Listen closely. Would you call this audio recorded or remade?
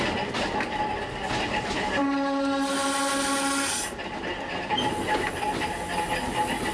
recorded